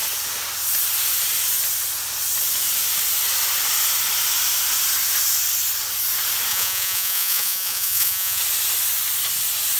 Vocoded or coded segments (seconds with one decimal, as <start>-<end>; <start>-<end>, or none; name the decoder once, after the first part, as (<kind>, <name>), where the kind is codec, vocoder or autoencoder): 6.5-8.4 (vocoder, Vocos)